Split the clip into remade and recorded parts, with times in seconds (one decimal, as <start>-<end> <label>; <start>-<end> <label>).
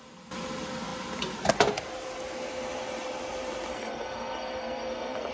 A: 0.0-3.7 recorded; 3.7-5.3 remade